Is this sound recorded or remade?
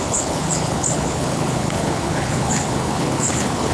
remade